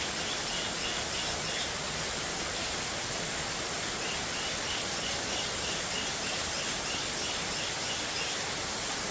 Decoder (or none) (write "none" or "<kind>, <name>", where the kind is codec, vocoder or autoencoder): none